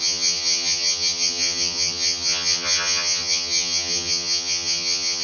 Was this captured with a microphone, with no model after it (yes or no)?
no